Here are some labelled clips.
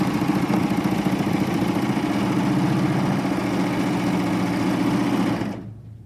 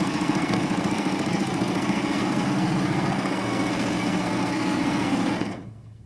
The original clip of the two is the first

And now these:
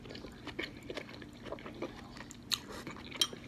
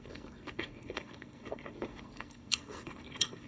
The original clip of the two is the first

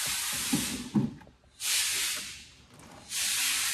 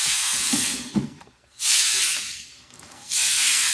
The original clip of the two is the first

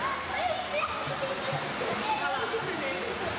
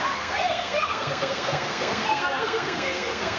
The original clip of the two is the first